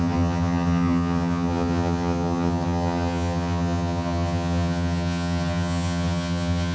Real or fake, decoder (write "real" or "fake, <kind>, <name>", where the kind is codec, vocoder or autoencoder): fake, vocoder, HiFi-GAN